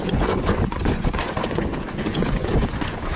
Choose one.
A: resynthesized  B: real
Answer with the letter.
A